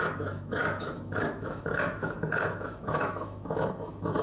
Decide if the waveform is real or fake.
fake